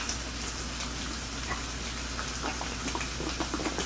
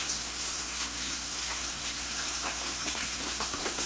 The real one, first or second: first